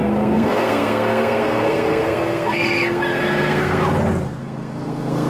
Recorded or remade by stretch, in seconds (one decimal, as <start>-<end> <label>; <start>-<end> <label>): 0.0-3.8 remade; 3.8-4.4 recorded; 4.4-5.3 remade